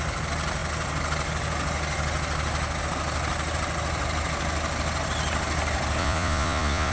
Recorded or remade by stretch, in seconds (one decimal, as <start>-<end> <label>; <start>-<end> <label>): 0.0-6.0 recorded; 6.0-6.9 remade